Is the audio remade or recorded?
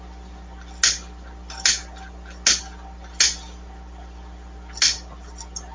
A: recorded